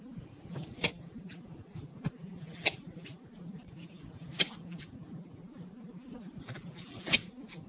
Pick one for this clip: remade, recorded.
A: recorded